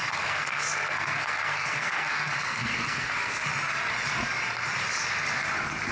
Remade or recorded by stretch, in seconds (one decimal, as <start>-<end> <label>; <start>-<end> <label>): 0.0-3.4 remade; 3.4-5.9 recorded